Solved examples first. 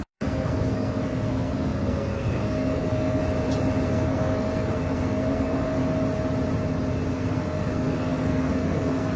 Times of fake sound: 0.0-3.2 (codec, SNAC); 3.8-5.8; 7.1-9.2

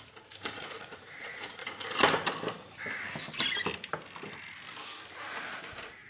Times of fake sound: 0.0-1.6 (vocoder, Vocos); 5.3-6.1